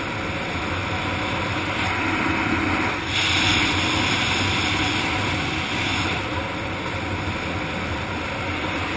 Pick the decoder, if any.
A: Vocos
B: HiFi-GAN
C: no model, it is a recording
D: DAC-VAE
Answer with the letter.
C